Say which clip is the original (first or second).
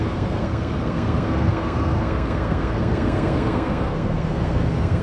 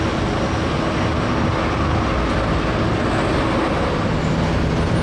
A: second